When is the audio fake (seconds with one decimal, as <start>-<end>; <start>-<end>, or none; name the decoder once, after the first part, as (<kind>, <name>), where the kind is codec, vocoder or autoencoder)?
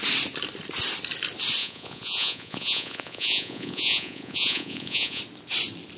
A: 1.6-5.2 (vocoder, Vocos)